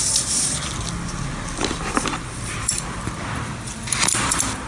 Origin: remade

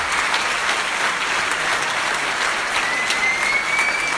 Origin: recorded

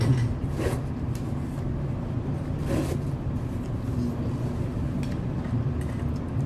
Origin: recorded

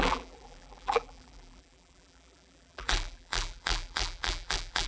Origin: remade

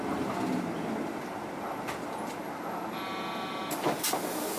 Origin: recorded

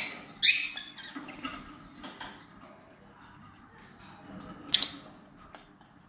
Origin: recorded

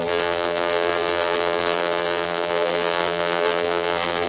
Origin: remade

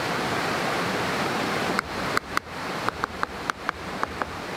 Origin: remade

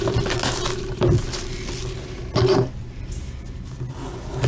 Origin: recorded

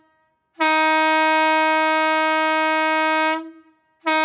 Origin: recorded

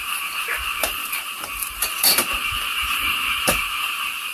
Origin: remade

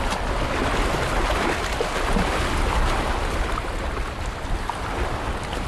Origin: recorded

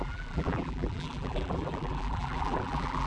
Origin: remade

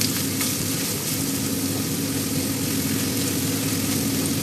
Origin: recorded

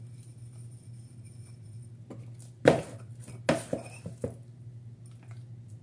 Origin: recorded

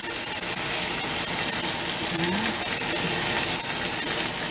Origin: recorded